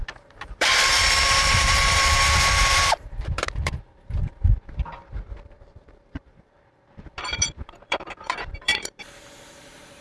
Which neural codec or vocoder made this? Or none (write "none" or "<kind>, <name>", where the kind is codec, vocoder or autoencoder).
vocoder, BigVGAN v2